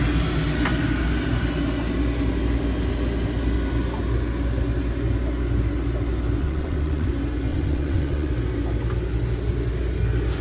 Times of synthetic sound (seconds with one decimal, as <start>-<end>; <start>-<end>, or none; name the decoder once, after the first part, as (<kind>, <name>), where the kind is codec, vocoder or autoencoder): 6.4-7.1 (vocoder, WaveNeXt); 7.5-8.3